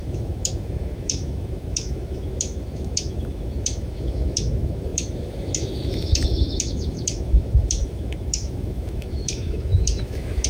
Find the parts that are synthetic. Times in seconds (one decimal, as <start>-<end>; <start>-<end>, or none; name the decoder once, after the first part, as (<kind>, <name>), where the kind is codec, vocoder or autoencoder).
0.0-10.5 (autoencoder, DAC-VAE)